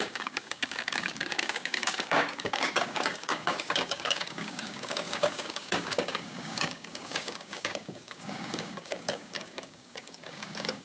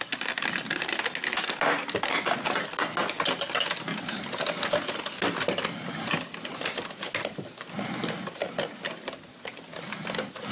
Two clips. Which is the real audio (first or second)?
second